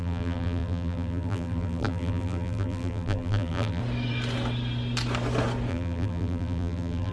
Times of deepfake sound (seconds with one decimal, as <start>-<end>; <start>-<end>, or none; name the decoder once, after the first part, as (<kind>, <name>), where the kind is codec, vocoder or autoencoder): 0.0-3.8 (vocoder, BigVGAN v2); 5.7-7.1